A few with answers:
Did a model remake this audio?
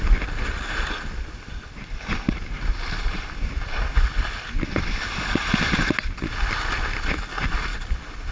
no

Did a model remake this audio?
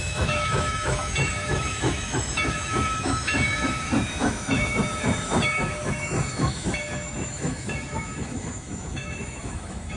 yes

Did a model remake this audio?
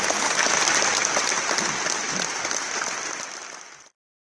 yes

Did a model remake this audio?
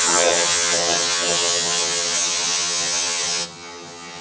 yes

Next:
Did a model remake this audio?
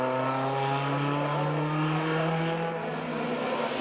no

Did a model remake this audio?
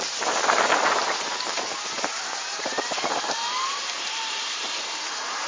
yes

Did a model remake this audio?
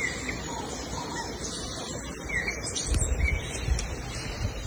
no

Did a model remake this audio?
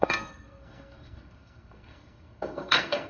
yes